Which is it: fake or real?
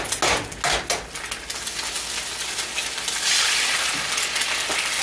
real